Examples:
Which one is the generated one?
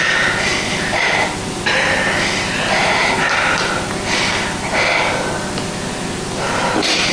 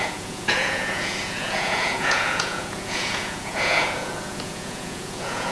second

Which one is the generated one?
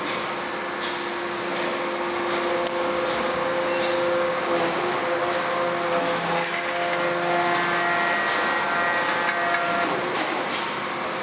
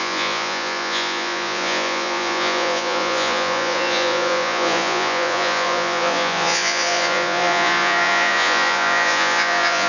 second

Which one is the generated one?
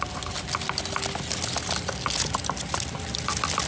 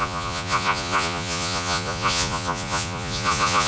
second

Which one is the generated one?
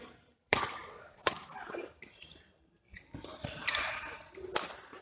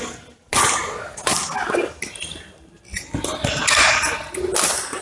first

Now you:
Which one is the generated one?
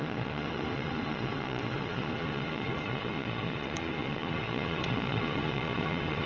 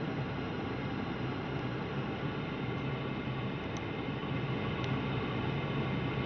first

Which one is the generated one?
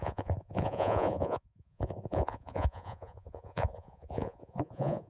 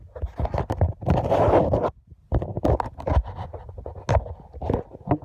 first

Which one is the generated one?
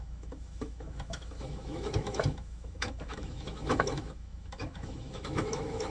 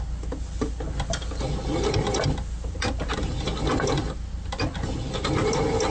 first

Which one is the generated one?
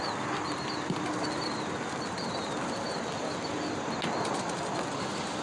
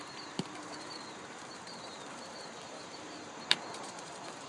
second